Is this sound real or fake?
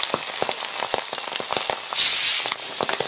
real